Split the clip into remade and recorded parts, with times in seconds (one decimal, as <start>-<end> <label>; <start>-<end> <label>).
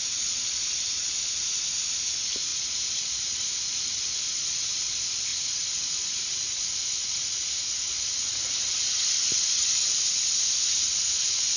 0.0-5.3 recorded; 5.3-9.9 remade; 9.9-11.6 recorded